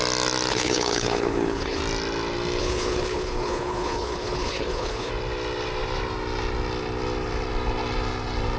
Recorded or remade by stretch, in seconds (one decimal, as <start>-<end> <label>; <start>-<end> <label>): 0.0-0.5 recorded; 0.5-1.8 remade; 1.8-2.6 recorded; 2.6-5.1 remade; 5.1-8.6 recorded